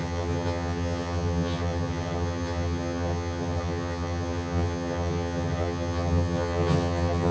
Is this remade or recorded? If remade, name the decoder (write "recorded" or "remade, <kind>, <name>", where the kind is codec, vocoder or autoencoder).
remade, vocoder, HiFi-GAN